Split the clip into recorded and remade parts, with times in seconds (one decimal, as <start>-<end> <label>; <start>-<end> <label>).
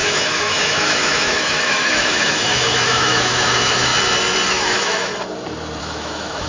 0.0-3.9 remade; 3.9-4.5 recorded; 4.5-5.1 remade; 5.1-5.8 recorded; 5.8-6.5 remade